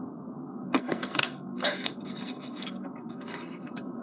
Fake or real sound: fake